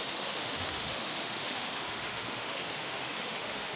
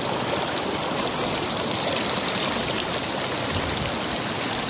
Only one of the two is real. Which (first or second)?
second